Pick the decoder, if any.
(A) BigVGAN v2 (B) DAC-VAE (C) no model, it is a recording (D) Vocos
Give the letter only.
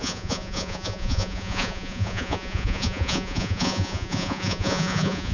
D